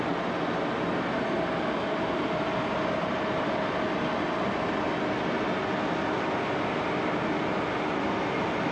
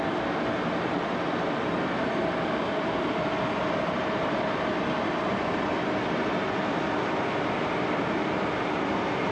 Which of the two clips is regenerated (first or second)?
second